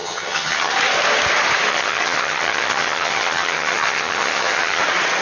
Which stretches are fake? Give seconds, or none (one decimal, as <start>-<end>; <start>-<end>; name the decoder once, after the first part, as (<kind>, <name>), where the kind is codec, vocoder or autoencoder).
0.0-0.7 (vocoder, HiFi-GAN); 1.7-4.8